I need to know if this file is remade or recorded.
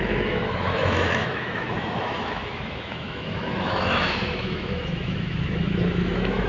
remade